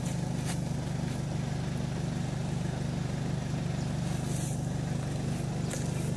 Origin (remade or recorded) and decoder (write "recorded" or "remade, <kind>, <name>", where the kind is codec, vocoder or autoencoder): recorded